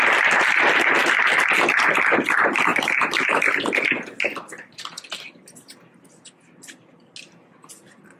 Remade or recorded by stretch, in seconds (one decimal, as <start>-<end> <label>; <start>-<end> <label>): 0.0-2.7 recorded; 2.7-3.3 remade; 3.3-8.2 recorded